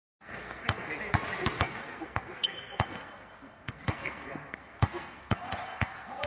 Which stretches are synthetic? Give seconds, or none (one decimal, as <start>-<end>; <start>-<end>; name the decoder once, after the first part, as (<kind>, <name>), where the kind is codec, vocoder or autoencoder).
0.0-0.9 (codec, SNAC); 1.6-6.3